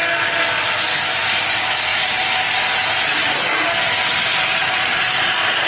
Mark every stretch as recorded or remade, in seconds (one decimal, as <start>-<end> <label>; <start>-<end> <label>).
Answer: 0.0-5.7 recorded